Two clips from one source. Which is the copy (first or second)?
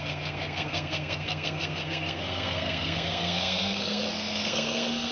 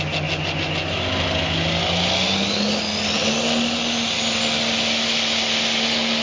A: first